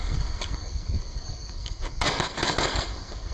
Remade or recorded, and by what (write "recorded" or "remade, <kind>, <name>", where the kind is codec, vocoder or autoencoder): remade, codec, SNAC